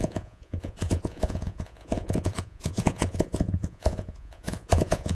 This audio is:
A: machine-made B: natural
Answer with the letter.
A